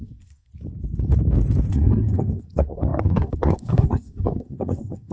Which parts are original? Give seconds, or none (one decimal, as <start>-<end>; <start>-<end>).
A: 0.5-1.7